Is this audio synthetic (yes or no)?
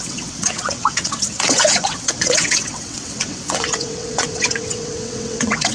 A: yes